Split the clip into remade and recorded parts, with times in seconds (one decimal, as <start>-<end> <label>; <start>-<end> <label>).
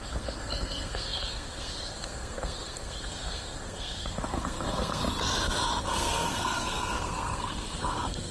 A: 0.0-5.0 remade; 5.0-5.8 recorded; 5.8-8.3 remade